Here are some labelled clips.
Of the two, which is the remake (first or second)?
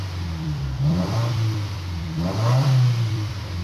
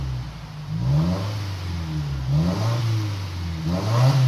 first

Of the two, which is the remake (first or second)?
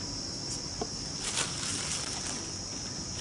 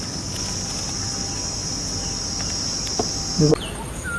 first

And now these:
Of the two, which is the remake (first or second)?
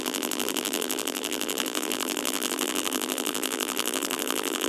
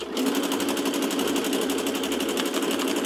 first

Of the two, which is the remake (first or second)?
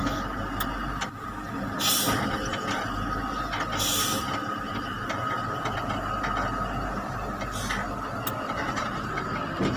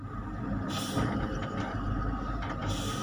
second